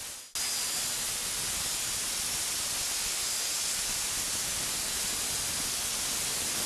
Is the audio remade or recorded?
recorded